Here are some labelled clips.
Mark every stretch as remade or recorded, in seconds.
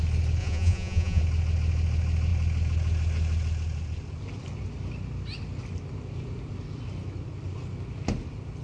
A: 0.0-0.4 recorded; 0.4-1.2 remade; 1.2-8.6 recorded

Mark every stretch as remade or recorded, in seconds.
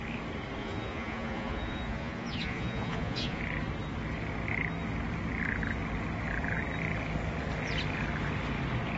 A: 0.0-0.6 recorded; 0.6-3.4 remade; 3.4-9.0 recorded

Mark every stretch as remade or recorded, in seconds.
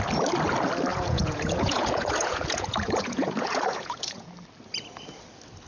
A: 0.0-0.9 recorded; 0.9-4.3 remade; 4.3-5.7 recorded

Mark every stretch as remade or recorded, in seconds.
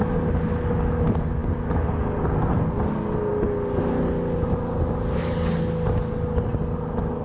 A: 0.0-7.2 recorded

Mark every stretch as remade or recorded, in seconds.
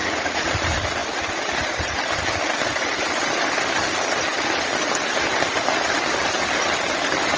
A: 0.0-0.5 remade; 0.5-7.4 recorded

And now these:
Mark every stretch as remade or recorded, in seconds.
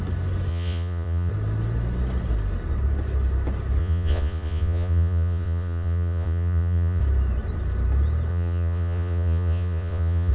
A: 0.0-0.5 recorded; 0.5-1.3 remade; 1.3-3.8 recorded; 3.8-7.0 remade; 7.0-8.3 recorded; 8.3-10.3 remade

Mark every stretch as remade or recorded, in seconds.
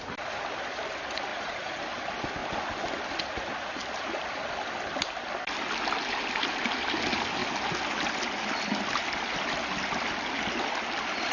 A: 0.0-1.3 recorded; 1.3-1.8 remade; 1.8-11.3 recorded